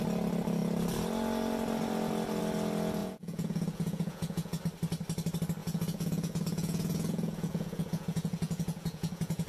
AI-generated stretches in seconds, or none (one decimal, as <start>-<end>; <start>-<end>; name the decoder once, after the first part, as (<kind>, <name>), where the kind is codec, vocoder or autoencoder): 3.0-4.6 (vocoder, Vocos); 5.6-9.5

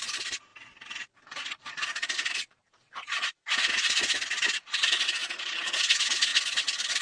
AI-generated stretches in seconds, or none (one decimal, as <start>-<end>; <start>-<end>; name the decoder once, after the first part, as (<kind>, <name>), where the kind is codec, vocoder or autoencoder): 0.0-6.3 (vocoder, Vocos)

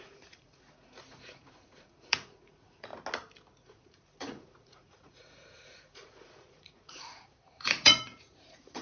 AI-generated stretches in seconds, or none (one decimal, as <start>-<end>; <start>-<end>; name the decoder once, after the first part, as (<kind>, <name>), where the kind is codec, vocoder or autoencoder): 0.0-2.9 (vocoder, Vocos); 3.5-8.8